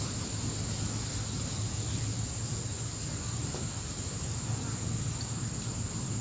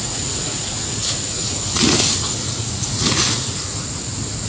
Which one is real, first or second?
first